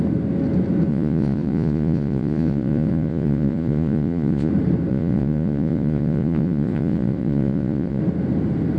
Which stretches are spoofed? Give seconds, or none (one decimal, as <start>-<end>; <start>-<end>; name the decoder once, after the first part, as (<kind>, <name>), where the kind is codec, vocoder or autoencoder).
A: 0.9-4.5 (vocoder, Vocos); 4.9-8.0